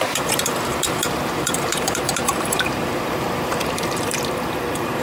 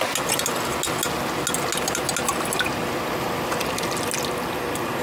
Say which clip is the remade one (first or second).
first